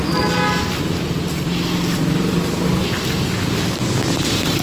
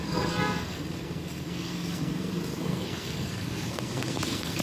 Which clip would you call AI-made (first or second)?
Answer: second